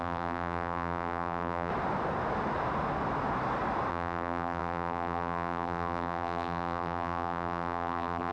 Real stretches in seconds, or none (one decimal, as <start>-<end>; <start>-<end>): 1.7-3.9